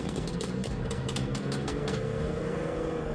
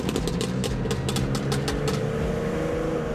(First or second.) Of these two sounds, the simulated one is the first